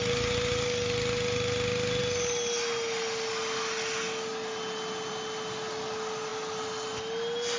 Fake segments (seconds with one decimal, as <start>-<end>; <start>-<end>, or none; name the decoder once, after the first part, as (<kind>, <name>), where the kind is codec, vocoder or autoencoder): none

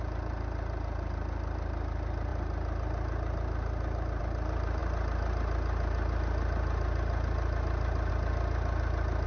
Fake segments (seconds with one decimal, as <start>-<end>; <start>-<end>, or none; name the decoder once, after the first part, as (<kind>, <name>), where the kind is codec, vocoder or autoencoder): none